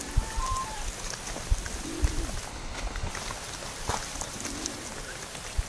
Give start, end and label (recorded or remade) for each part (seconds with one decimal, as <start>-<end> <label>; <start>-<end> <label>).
0.0-2.5 recorded; 2.5-3.1 remade; 3.1-5.7 recorded